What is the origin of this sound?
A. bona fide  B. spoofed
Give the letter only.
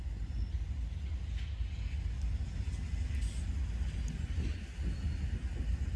A